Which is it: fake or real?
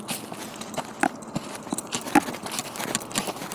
real